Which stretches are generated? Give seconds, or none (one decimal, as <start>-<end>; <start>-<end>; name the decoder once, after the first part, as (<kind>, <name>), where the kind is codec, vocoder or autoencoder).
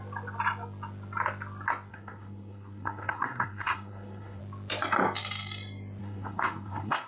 1.9-4.4 (codec, SNAC); 6.0-7.1